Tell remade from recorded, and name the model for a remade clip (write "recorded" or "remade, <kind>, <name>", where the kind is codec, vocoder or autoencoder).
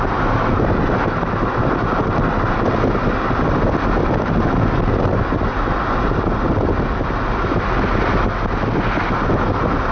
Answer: recorded